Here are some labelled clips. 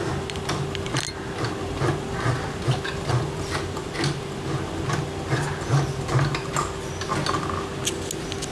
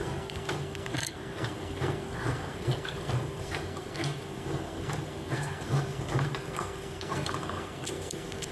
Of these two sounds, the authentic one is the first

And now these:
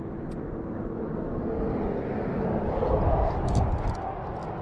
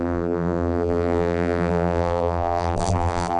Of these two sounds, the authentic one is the first